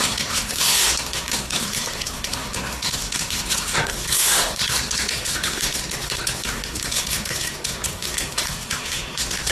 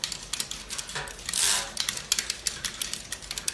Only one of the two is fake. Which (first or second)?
first